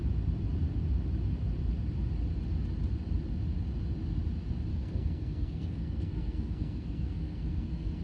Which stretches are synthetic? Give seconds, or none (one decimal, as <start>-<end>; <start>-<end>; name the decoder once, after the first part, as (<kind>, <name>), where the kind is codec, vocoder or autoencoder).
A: 4.7-8.0 (codec, SNAC)